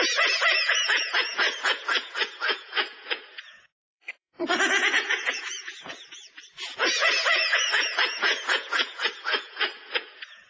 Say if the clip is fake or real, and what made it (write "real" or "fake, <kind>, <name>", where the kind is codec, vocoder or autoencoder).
fake, vocoder, Vocos